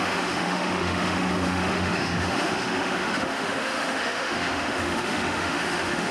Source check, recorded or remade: remade